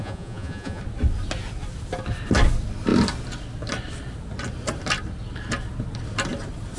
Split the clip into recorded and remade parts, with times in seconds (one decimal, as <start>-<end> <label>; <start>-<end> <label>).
0.0-0.8 remade; 0.8-6.8 recorded